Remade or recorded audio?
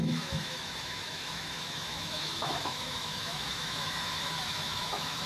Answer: remade